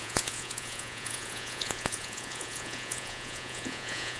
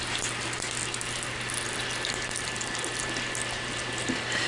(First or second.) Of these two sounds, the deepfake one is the first